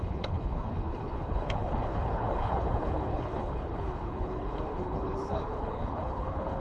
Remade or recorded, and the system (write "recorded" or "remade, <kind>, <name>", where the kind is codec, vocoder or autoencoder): remade, codec, HILCodec